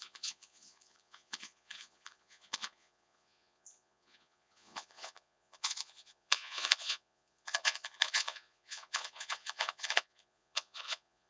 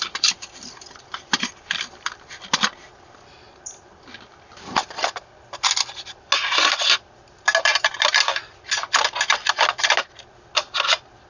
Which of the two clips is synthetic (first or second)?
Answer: first